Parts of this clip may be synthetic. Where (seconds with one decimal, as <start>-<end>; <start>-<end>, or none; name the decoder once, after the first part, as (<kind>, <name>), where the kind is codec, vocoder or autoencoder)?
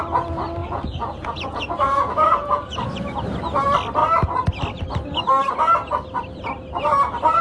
0.6-3.0 (vocoder, Vocos)